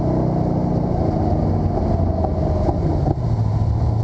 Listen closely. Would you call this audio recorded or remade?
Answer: recorded